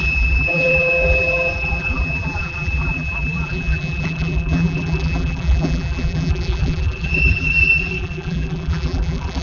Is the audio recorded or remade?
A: remade